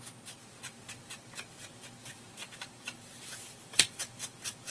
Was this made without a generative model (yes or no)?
no